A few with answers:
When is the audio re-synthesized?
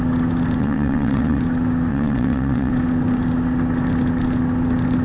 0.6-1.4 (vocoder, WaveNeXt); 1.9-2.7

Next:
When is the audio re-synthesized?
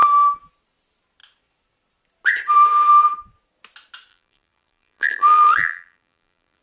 4.1-6.6 (vocoder, BigVGAN v2)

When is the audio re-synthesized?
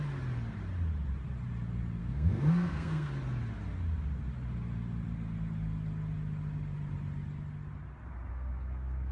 2.0-3.1 (codec, SNAC); 8.3-9.1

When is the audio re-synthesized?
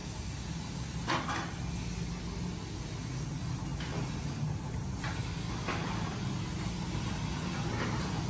none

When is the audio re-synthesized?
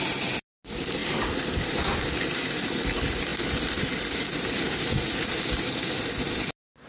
1.0-2.6 (vocoder, BigVGAN v2); 3.3-5.7